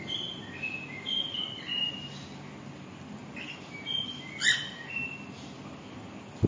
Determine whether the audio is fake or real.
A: real